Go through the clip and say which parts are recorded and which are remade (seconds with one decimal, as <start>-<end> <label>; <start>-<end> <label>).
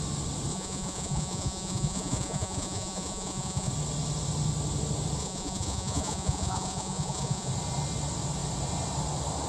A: 0.0-0.5 recorded; 0.5-3.7 remade; 3.7-5.2 recorded; 5.2-7.5 remade; 7.5-9.5 recorded